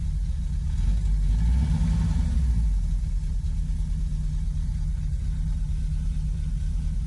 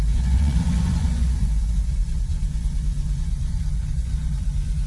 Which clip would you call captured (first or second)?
first